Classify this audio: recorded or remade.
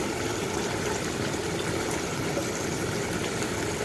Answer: recorded